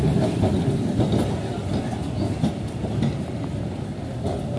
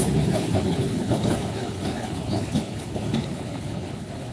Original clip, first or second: first